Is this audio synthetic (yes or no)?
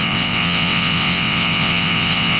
yes